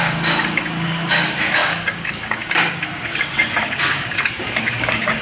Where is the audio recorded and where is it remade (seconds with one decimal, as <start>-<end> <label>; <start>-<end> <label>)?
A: 0.0-5.2 remade